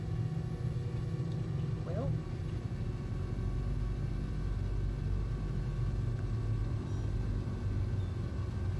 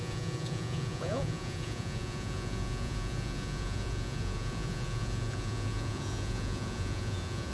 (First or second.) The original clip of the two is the first